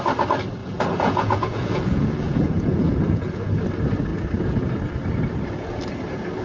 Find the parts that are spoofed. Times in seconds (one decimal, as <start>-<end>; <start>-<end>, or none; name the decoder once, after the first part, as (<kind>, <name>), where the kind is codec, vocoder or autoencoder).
0.6-3.6 (vocoder, Vocos)